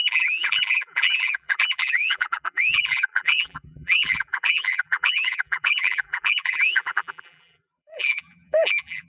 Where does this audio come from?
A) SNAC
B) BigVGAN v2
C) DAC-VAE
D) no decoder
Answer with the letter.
B